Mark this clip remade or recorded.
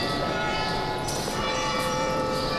remade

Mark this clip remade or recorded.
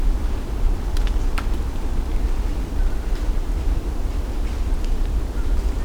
remade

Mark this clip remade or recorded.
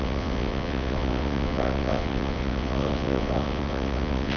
remade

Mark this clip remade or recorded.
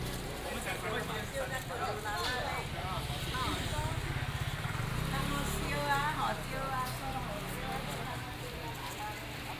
recorded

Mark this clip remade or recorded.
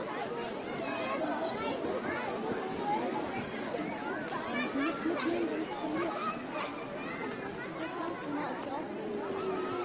recorded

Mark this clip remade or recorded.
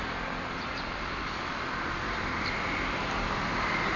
remade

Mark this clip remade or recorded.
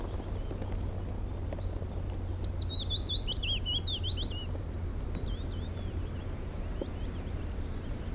recorded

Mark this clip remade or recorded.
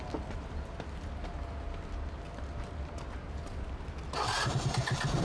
recorded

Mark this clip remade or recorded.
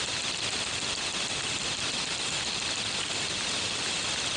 recorded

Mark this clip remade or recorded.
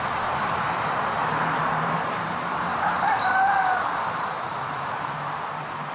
remade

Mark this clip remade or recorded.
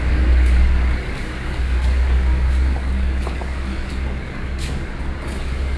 remade